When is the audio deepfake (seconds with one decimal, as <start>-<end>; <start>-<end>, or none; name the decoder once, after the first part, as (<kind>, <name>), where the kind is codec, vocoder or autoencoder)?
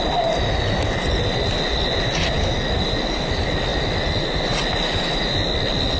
none